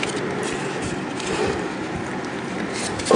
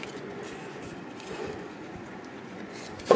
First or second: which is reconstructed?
second